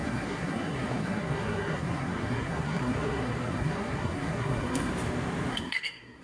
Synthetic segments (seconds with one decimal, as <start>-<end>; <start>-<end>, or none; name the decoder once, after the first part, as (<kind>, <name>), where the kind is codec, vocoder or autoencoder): 0.0-4.9 (codec, SNAC); 5.5-6.2